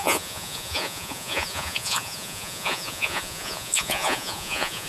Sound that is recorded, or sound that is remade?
remade